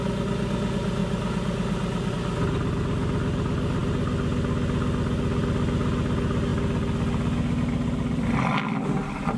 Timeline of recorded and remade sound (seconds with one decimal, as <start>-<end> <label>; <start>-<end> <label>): 0.0-9.4 recorded